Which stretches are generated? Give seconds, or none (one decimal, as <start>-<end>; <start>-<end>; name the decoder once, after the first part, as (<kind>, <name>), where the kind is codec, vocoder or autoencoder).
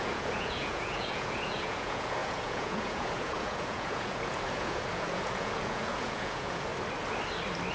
0.0-6.7 (vocoder, Vocos)